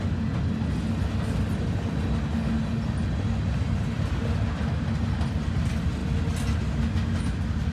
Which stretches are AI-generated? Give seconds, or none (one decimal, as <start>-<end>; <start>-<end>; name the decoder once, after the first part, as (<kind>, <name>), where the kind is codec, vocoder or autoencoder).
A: none